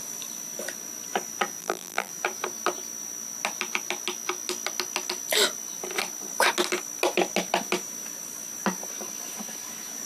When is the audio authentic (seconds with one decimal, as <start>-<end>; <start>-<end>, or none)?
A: 0.0-1.6; 2.1-10.0